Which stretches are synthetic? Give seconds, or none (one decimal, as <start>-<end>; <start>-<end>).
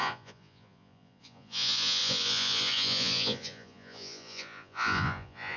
0.0-5.6